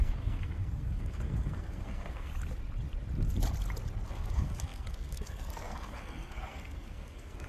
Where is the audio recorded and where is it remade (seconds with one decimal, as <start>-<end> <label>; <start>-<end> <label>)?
0.0-2.3 remade; 2.3-4.1 recorded; 4.1-7.5 remade